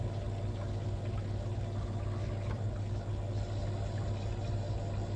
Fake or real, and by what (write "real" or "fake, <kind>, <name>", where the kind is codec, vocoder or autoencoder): real